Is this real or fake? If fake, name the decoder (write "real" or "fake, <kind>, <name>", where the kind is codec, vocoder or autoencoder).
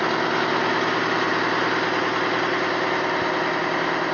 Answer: real